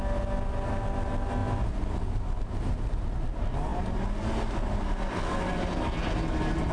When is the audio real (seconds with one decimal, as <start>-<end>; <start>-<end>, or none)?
0.0-6.7